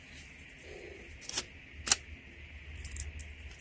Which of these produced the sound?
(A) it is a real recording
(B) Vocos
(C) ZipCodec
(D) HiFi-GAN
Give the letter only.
A